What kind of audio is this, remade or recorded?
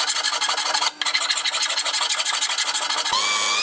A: recorded